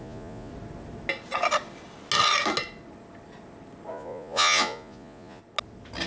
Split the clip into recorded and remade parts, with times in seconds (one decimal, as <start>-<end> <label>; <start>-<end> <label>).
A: 0.0-0.5 remade; 0.5-3.9 recorded; 3.9-5.4 remade; 5.4-6.1 recorded

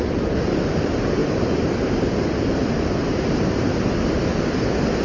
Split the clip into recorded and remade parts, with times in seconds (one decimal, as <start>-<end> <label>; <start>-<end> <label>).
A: 0.0-1.2 recorded; 1.2-4.2 remade; 4.2-5.0 recorded

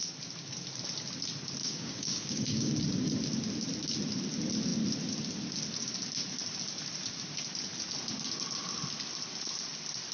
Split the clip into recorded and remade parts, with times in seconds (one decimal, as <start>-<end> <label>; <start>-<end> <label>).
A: 0.0-1.6 recorded; 1.6-2.7 remade; 2.7-10.1 recorded